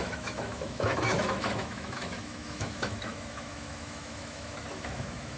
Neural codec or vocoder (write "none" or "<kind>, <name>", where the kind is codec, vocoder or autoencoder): autoencoder, DAC-VAE